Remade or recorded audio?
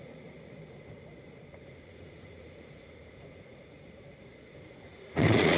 remade